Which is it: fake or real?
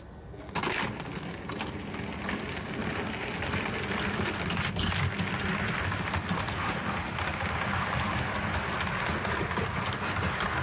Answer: real